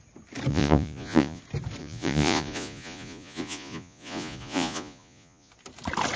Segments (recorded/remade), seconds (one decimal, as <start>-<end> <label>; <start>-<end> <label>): 0.0-0.5 recorded; 0.5-1.4 remade; 1.4-1.8 recorded; 1.8-5.5 remade; 5.5-6.2 recorded